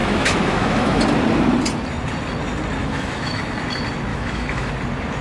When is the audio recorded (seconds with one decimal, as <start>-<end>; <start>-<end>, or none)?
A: 1.0-2.8; 3.4-4.1; 4.7-5.2